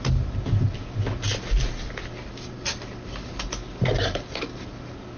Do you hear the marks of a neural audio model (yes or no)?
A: no